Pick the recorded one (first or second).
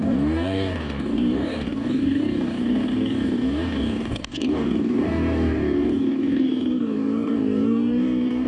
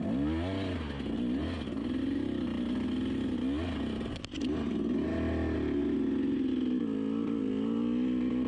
second